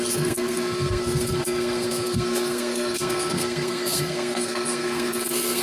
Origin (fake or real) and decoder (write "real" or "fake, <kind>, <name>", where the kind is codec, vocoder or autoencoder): fake, codec, SNAC